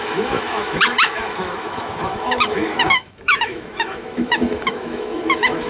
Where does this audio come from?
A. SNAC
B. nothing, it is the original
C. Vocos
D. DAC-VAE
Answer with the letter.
D